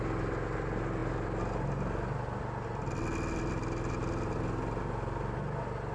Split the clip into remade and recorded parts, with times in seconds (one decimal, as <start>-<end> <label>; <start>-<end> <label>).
0.0-5.9 recorded